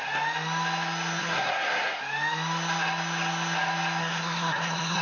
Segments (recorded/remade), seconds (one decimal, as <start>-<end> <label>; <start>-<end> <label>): 0.0-1.2 recorded; 1.2-2.0 remade; 2.0-4.0 recorded; 4.0-5.0 remade